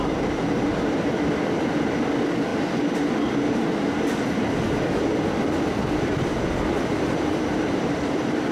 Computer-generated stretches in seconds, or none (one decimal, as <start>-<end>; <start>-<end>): 0.0-2.5; 5.1-8.5